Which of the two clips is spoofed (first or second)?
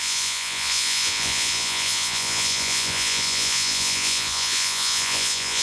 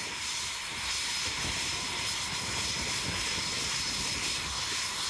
first